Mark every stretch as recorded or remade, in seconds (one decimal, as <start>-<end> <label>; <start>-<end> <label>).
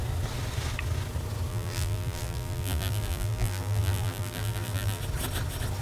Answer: 0.0-1.5 recorded; 1.5-5.0 remade; 5.0-5.8 recorded